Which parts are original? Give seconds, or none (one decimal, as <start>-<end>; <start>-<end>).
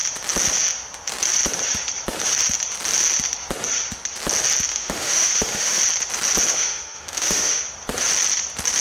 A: 0.0-4.7; 5.8-6.5; 7.6-8.8